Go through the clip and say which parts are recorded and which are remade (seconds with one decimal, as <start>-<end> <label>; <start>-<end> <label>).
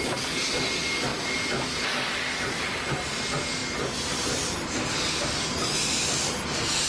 0.0-6.9 recorded